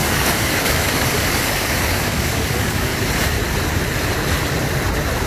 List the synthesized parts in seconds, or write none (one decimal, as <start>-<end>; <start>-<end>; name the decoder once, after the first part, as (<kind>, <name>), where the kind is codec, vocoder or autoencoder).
0.0-2.9 (codec, DAC)